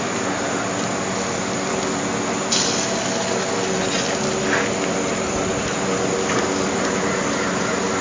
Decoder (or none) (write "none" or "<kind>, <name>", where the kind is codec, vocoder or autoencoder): none